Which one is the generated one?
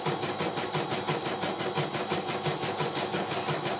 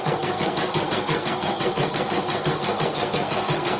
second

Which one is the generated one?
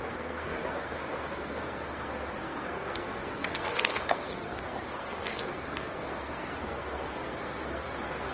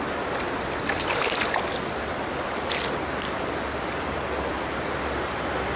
first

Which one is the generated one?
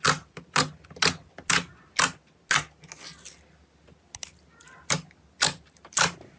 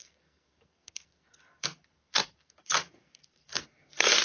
second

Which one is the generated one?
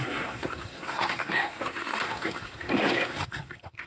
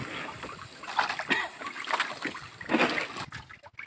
first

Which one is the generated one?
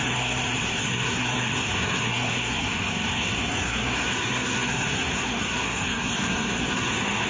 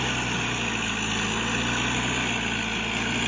first